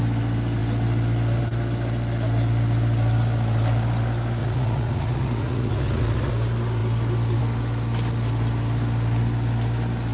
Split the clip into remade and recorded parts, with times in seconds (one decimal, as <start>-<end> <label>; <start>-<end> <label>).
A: 0.0-4.4 recorded; 4.4-6.3 remade; 6.3-10.1 recorded